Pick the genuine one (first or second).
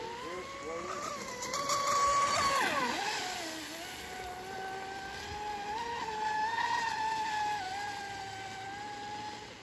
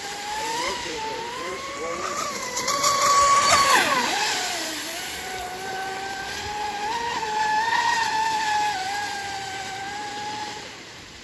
first